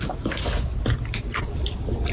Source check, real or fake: real